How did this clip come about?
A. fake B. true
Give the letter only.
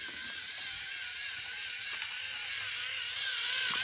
B